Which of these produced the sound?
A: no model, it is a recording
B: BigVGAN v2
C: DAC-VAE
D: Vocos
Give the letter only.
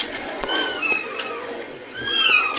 D